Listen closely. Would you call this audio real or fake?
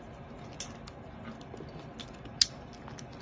real